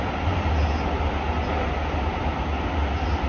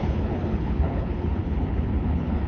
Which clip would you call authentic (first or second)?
first